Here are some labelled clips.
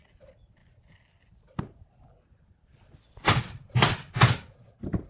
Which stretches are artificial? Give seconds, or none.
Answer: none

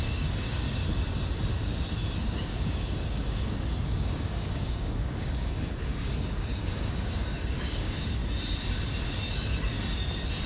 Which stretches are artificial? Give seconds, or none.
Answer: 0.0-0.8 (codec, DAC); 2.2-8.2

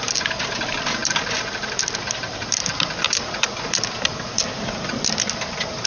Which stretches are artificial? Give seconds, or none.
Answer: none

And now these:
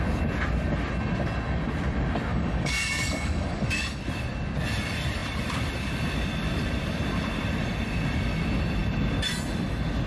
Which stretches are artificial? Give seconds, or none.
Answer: 2.3-4.0 (codec, DAC)

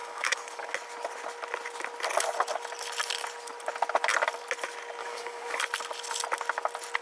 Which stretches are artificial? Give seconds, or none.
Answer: 0.0-0.7 (codec, DAC); 5.0-5.6

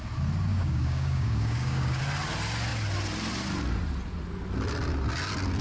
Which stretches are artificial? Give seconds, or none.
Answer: 0.5-2.0 (codec, DAC)

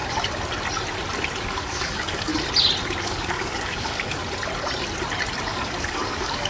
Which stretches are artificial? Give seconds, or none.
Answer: 1.4-2.3 (codec, DAC); 3.0-4.2; 5.5-6.5